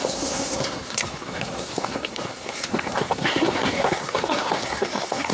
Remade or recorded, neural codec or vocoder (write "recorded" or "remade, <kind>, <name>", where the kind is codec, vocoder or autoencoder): remade, codec, SNAC